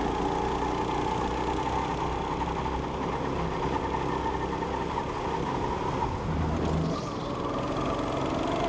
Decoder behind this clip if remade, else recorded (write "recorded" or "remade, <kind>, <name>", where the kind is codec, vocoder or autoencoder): recorded